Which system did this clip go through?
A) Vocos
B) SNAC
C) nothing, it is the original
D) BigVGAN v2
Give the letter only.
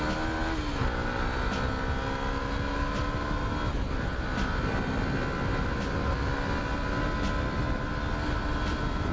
C